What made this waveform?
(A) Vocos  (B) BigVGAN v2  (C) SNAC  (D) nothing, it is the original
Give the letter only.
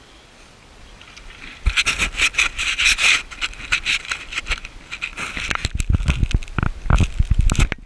D